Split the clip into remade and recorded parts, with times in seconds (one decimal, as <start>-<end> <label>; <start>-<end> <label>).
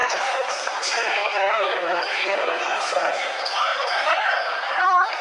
0.0-5.2 remade